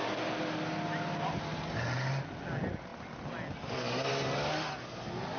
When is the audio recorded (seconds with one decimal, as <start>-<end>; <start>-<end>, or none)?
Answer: 0.0-5.4